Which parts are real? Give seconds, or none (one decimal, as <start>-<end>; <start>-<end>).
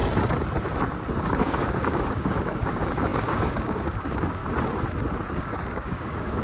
0.0-1.2; 4.4-5.3